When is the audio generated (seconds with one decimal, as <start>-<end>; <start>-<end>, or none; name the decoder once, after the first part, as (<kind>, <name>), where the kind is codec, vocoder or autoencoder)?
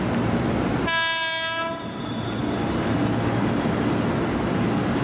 none